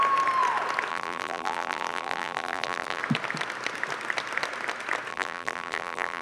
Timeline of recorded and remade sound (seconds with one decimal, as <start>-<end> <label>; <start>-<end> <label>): 0.0-0.9 recorded; 0.9-3.0 remade; 3.0-5.1 recorded; 5.1-6.2 remade